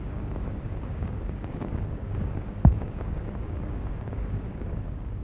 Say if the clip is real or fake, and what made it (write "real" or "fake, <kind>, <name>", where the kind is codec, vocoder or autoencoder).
fake, codec, DAC